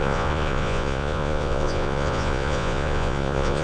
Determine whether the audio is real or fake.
fake